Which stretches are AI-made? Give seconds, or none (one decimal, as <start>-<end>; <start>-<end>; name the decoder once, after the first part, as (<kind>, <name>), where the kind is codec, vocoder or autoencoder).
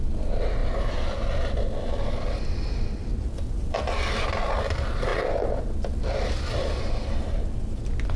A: none